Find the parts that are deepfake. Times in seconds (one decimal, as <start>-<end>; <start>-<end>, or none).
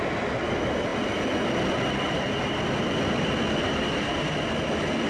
none